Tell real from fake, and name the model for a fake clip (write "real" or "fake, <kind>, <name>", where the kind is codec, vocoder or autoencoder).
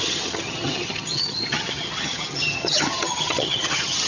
fake, vocoder, HiFi-GAN